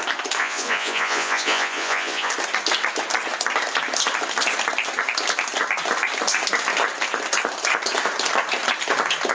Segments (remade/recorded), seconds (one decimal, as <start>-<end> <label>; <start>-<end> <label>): 0.0-0.4 recorded; 0.4-2.3 remade; 2.3-9.3 recorded